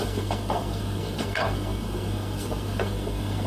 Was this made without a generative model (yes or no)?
no